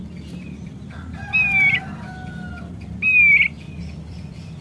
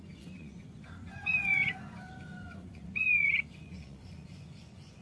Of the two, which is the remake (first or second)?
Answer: second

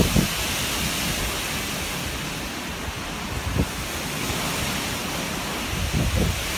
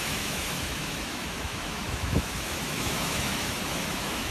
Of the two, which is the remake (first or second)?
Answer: second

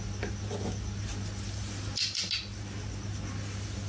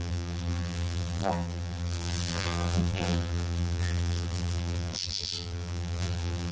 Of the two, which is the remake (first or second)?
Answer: second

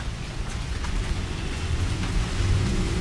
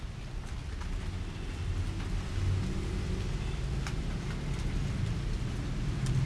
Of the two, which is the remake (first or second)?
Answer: first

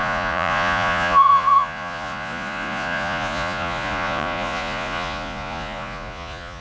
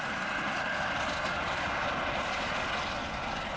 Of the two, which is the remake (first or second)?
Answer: first